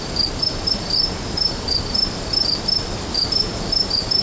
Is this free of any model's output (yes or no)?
yes